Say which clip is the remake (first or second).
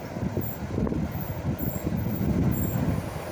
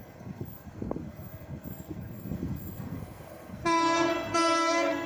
second